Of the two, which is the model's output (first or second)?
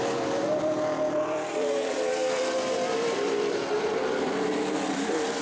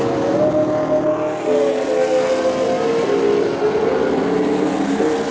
first